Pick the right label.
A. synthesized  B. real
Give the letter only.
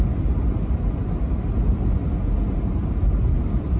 B